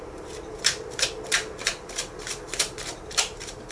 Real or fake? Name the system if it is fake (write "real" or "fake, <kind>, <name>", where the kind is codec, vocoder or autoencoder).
fake, vocoder, BigVGAN v2